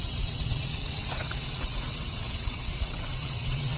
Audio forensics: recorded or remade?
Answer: remade